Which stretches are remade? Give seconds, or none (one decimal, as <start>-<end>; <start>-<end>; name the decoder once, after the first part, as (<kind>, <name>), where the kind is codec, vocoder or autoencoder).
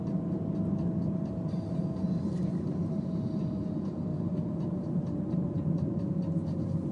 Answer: 4.1-6.0 (vocoder, BigVGAN v2)